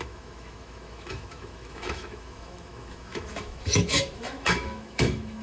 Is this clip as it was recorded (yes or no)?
no